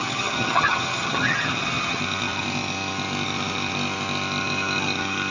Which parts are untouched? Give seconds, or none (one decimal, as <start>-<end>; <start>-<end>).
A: 2.0-5.3